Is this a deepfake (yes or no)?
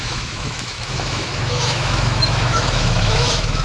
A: yes